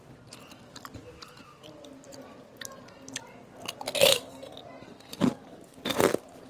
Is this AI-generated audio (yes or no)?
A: no